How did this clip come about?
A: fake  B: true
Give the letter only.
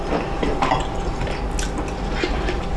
B